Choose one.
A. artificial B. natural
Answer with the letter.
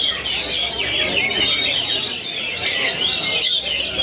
B